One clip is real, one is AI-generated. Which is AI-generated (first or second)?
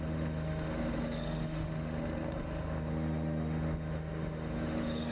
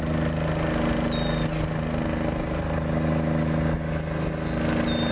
first